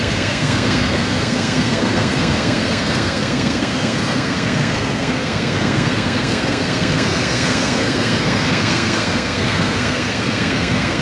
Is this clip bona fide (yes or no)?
no